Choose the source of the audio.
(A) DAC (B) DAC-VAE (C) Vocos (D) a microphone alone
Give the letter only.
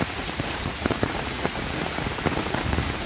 C